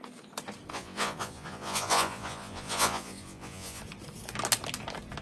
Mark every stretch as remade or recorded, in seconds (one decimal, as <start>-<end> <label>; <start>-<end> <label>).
0.0-0.7 recorded; 0.7-3.8 remade; 3.8-5.2 recorded